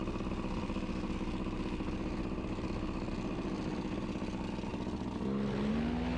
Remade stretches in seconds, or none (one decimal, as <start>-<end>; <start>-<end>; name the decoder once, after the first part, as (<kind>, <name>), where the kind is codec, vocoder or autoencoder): none